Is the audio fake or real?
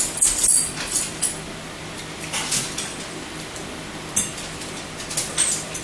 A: real